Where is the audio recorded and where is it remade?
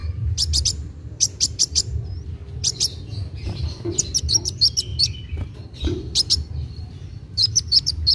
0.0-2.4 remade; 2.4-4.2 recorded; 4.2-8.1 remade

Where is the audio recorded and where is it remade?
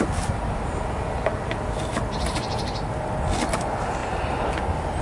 0.0-5.0 recorded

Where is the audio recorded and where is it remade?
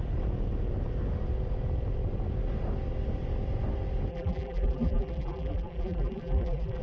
0.0-4.1 recorded; 4.1-6.8 remade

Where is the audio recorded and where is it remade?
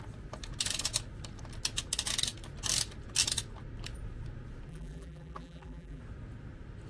0.0-4.7 recorded; 4.7-6.0 remade; 6.0-6.9 recorded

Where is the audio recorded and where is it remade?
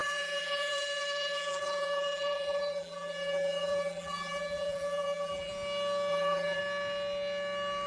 0.0-5.5 remade; 5.5-6.1 recorded; 6.1-6.6 remade; 6.6-7.9 recorded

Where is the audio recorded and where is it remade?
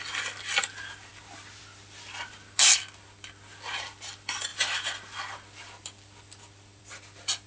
0.0-7.5 recorded